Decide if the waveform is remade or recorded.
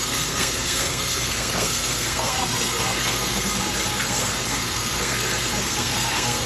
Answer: remade